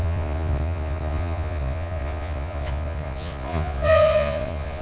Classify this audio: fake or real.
fake